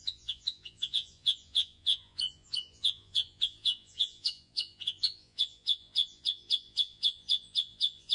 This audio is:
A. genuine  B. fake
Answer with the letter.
B